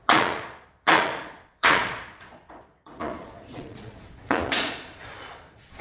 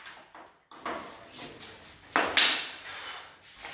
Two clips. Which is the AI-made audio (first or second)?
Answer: first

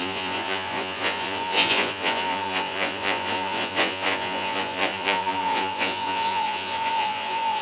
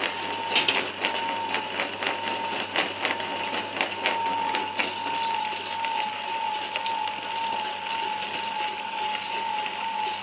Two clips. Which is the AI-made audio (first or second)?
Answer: first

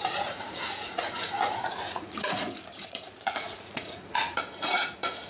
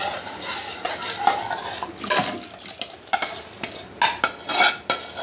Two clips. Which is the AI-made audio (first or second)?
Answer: first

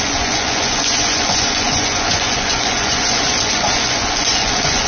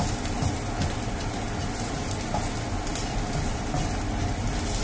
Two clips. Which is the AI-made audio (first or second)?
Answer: first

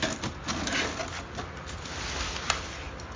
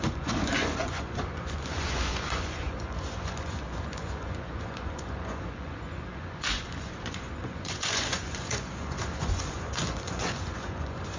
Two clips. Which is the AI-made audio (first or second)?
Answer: second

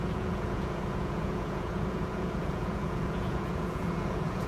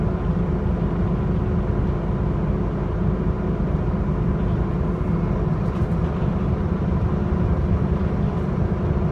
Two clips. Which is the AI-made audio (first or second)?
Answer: first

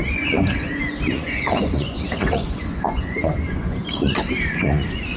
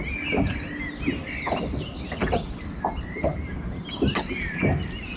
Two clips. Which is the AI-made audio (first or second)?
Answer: first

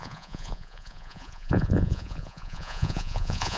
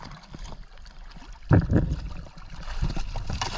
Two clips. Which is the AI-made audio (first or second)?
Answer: first